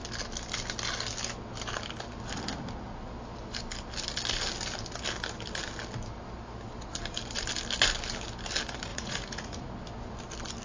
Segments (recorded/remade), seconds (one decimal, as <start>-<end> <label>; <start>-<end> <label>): 0.0-8.9 recorded; 8.9-9.7 remade; 9.7-10.6 recorded

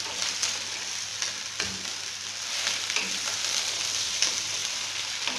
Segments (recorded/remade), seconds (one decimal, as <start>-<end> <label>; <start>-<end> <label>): 0.0-5.4 recorded